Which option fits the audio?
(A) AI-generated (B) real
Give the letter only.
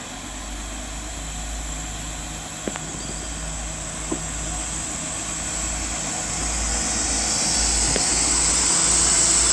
B